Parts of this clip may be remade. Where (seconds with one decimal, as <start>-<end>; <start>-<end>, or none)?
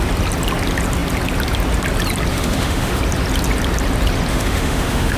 2.3-3.0; 4.3-5.2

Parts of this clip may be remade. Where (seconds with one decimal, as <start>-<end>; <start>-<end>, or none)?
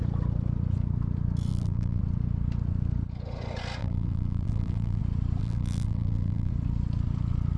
1.5-2.0; 3.8-5.0; 5.4-6.5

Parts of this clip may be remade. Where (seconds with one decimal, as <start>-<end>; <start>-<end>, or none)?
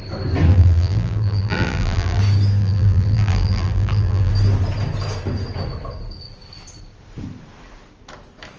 0.5-2.2; 2.6-4.3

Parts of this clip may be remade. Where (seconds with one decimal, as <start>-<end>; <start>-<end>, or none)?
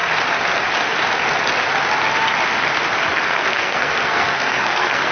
3.1-5.1